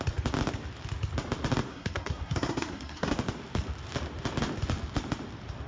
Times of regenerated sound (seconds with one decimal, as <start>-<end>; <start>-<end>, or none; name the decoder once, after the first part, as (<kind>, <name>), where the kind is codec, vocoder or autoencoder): 1.7-3.1 (codec, SNAC)